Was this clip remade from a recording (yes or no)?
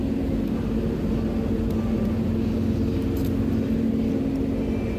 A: no